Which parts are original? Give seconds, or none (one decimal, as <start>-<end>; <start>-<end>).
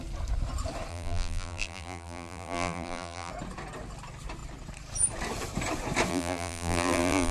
0.0-0.9; 3.3-6.1